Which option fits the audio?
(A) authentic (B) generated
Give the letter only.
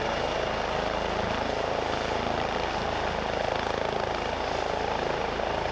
A